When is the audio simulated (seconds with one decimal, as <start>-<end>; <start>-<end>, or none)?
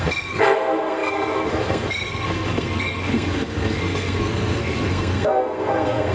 0.0-6.1